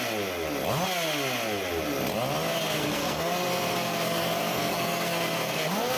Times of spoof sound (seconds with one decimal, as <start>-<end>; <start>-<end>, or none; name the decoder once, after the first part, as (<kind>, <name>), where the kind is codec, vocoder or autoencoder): 2.5-6.0 (codec, SNAC)